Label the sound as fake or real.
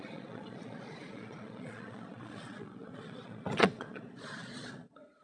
fake